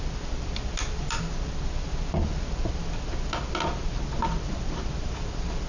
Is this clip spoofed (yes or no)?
no